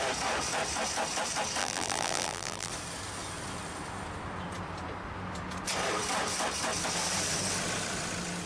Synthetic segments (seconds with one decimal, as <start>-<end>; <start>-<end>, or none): 1.6-2.7